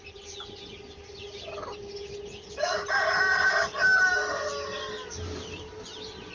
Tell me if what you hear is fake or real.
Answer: real